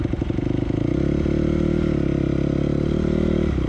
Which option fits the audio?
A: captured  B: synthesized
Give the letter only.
A